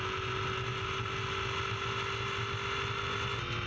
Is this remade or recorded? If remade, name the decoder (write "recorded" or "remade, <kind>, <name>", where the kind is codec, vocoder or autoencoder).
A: recorded